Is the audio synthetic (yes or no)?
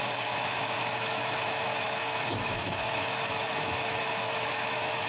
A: yes